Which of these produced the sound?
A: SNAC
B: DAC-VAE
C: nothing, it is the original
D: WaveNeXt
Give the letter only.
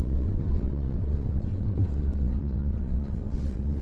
D